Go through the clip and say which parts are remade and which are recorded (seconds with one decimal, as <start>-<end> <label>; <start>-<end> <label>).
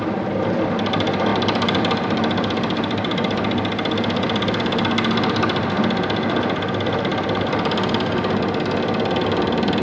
0.0-9.8 recorded